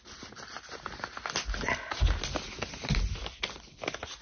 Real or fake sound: real